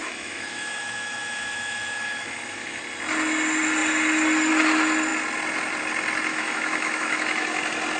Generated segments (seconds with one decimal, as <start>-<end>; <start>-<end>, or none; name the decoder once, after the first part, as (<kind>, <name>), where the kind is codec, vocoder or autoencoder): 0.0-2.8 (autoencoder, DAC-VAE); 6.3-7.6